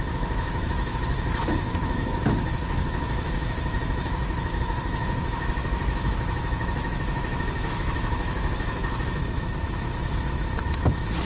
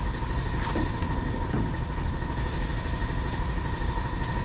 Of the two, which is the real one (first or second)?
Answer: second